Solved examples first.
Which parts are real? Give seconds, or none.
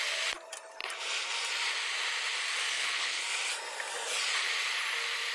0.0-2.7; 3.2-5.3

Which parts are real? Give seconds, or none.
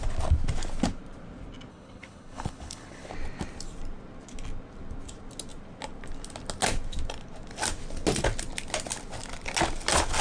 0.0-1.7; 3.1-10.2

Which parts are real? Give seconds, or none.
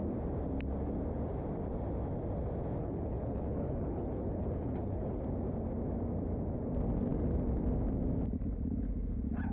0.0-2.8; 5.2-9.5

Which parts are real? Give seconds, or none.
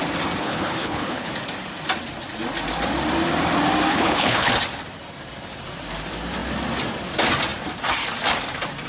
0.0-0.4; 1.3-3.9; 4.5-8.9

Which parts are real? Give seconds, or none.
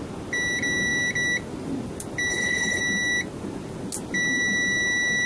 0.0-2.3; 2.8-5.3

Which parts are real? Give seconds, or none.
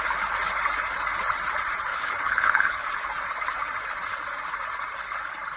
0.0-1.9; 2.9-5.6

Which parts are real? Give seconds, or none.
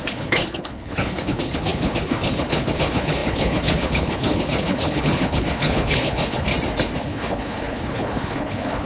6.5-7.0